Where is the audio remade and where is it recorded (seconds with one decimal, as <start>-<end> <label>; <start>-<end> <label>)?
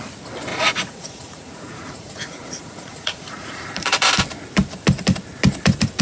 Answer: 0.0-0.5 recorded; 0.5-4.1 remade; 4.1-6.0 recorded